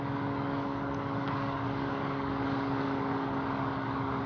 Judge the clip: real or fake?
fake